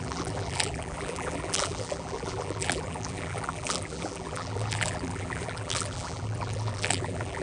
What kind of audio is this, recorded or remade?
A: remade